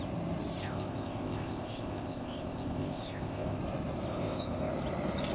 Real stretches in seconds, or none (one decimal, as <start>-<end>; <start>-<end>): 0.0-0.6; 3.6-4.1; 4.7-5.3